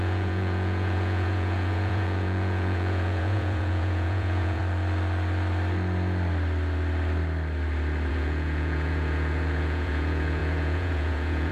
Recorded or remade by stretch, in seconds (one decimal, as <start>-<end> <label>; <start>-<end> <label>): 0.0-4.6 remade; 4.6-8.1 recorded; 8.1-11.5 remade